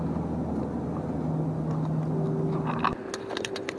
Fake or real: real